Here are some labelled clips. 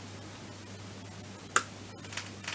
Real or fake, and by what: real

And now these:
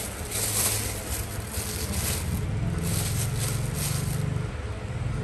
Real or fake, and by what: real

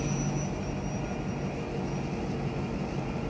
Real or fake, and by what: real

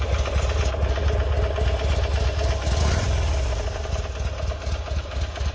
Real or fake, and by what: real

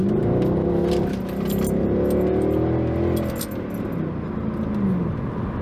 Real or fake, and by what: real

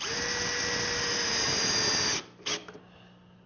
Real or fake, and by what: real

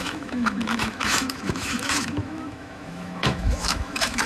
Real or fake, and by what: fake, autoencoder, DAC-VAE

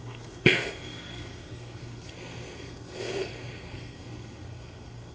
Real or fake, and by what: fake, codec, SNAC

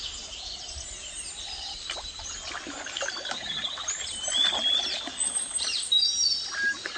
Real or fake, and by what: real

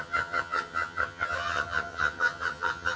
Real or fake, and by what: fake, vocoder, HiFi-GAN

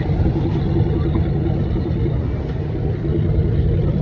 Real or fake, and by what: real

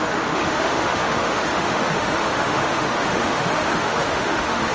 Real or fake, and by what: fake, autoencoder, DAC-VAE